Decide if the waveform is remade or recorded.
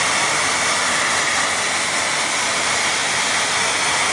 recorded